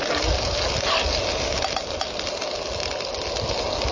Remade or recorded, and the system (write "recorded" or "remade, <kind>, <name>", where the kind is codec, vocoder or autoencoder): recorded